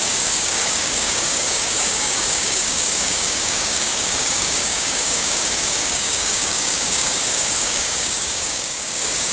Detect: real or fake fake